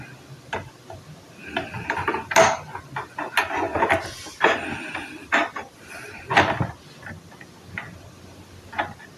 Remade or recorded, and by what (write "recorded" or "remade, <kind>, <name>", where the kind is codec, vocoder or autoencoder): recorded